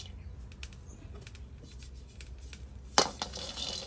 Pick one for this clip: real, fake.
real